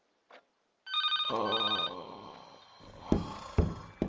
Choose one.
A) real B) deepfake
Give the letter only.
A